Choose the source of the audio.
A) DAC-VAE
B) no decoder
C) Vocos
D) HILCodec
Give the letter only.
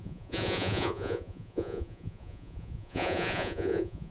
C